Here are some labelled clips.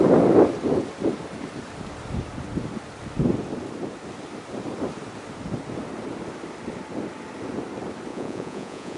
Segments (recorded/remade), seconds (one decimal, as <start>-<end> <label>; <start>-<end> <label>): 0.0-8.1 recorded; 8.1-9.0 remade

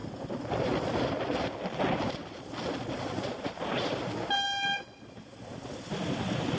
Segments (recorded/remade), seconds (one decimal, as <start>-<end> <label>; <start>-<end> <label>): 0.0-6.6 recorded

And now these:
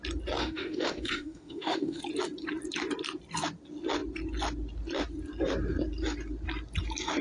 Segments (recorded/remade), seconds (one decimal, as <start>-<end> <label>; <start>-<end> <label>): 0.0-0.4 recorded; 0.4-2.0 remade; 2.0-7.2 recorded

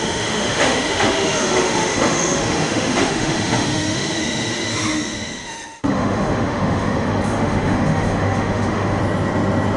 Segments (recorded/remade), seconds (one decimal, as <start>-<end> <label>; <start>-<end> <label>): 0.0-9.0 remade; 9.0-9.8 recorded

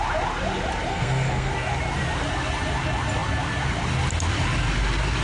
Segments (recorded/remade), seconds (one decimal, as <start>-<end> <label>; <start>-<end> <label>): 0.0-0.9 recorded; 0.9-1.5 remade; 1.5-5.2 recorded